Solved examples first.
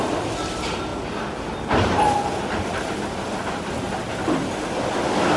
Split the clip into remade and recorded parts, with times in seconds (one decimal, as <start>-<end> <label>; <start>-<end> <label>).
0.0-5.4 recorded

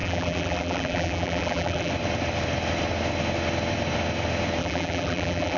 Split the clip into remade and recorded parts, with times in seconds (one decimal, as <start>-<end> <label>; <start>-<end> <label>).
0.0-1.9 remade; 1.9-4.6 recorded; 4.6-5.6 remade

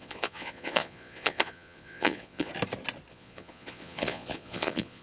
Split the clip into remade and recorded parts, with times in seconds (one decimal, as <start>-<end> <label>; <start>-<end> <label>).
0.0-2.5 remade; 2.5-3.1 recorded; 3.1-5.0 remade